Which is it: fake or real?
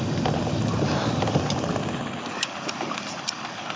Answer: real